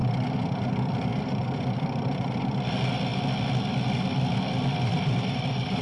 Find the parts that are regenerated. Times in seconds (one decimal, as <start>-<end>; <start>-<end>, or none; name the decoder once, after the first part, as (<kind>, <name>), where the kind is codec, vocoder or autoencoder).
1.1-2.4 (vocoder, BigVGAN v2); 4.9-5.8